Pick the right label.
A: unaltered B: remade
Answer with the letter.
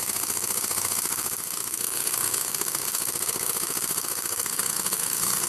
B